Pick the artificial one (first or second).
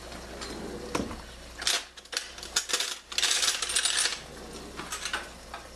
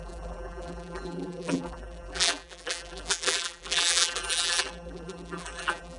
second